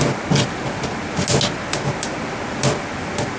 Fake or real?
real